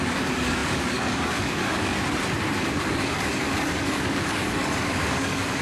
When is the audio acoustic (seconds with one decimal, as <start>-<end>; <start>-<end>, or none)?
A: 1.9-2.9